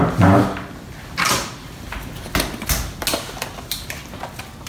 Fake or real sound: real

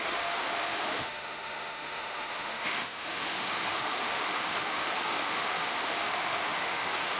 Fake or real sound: fake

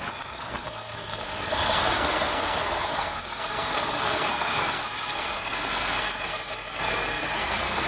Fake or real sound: fake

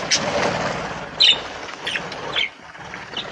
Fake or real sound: real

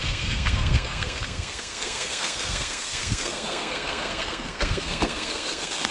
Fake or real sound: fake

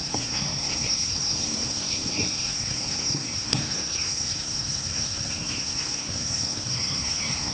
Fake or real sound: fake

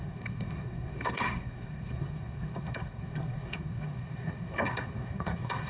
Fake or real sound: fake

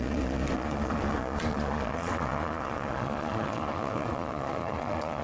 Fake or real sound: fake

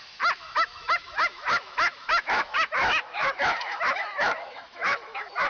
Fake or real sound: fake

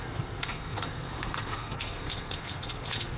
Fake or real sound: fake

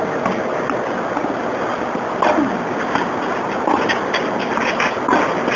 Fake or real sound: real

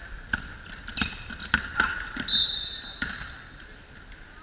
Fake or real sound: real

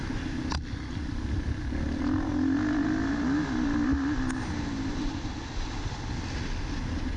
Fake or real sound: real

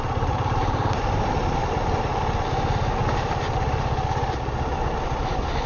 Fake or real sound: real